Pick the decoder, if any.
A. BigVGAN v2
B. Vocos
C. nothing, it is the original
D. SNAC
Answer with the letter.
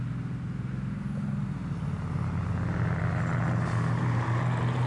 C